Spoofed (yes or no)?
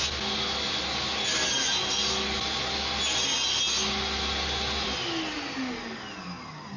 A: no